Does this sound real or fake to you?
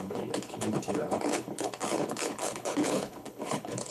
fake